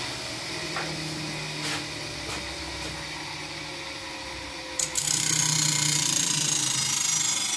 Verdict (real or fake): real